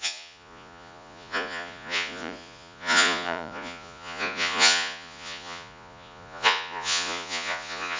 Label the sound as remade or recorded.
remade